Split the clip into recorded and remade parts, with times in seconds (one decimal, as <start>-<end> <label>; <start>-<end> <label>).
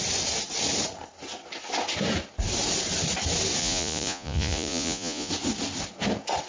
0.0-3.6 recorded; 3.6-5.3 remade; 5.3-6.5 recorded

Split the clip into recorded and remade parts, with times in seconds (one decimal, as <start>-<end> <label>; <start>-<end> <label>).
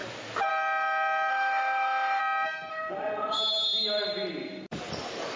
0.0-1.3 recorded; 1.3-2.2 remade; 2.2-2.7 recorded; 2.7-3.4 remade; 3.4-5.4 recorded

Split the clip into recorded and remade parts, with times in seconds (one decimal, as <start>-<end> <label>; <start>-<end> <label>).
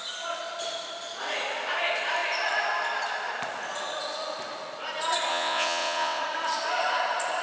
0.0-5.3 recorded; 5.3-6.2 remade; 6.2-7.4 recorded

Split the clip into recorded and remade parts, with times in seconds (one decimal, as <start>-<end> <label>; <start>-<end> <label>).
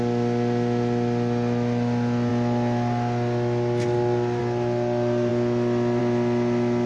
0.0-6.9 recorded